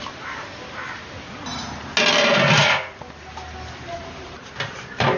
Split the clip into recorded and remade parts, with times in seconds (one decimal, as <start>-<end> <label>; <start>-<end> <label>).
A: 0.0-0.8 remade; 0.8-3.9 recorded; 3.9-5.2 remade